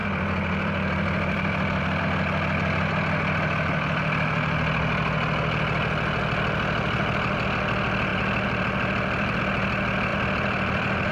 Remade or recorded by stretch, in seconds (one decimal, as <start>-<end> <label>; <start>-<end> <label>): 0.0-2.0 remade; 2.0-8.1 recorded; 8.1-9.4 remade; 9.4-10.1 recorded; 10.1-11.1 remade